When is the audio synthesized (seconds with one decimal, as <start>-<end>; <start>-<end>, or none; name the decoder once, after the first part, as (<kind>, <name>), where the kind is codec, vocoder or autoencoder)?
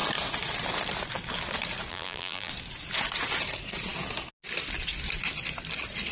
1.9-2.5 (vocoder, BigVGAN v2)